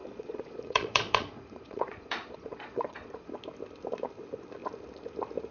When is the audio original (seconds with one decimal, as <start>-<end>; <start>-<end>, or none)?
3.3-5.5